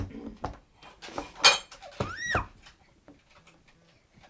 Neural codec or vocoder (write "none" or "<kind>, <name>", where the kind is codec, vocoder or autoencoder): none